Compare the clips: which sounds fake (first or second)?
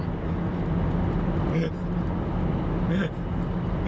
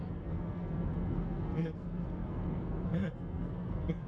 second